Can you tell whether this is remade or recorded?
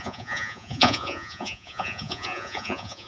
remade